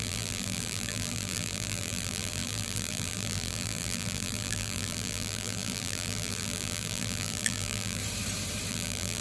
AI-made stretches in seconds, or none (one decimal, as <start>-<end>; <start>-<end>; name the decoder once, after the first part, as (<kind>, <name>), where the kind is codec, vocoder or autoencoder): 0.0-8.0 (vocoder, BigVGAN v2); 8.7-9.2